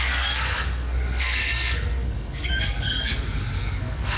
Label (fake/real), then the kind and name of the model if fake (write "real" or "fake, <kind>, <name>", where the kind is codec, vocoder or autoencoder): fake, codec, SNAC